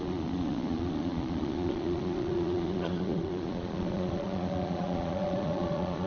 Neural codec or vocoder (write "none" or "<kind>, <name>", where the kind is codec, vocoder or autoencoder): vocoder, Vocos